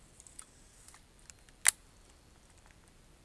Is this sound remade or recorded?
recorded